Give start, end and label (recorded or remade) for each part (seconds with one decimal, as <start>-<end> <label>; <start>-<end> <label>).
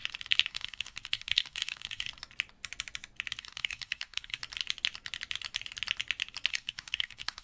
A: 0.0-0.5 recorded; 0.5-2.1 remade; 2.1-3.4 recorded; 3.4-4.4 remade; 4.4-6.5 recorded; 6.5-7.4 remade